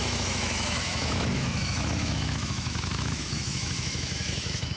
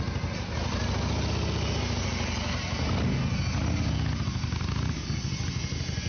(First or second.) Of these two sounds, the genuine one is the second